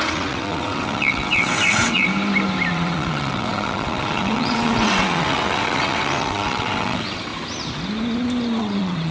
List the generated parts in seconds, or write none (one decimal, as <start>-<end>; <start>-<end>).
0.0-2.1; 2.7-7.3; 8.6-9.1

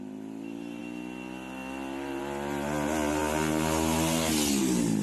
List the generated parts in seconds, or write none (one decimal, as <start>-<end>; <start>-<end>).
none

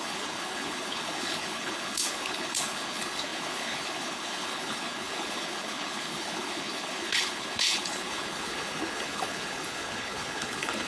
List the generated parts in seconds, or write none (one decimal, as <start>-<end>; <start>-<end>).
0.0-10.9